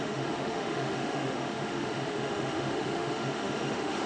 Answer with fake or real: fake